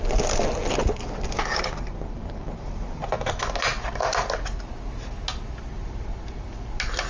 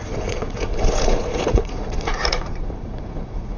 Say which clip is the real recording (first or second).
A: first